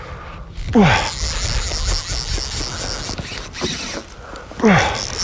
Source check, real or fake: real